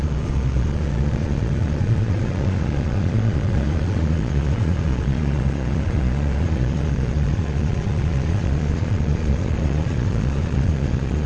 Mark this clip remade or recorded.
remade